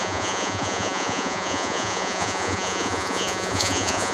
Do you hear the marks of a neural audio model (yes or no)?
yes